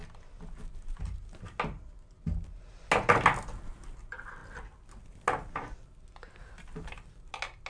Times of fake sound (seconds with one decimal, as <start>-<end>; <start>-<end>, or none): none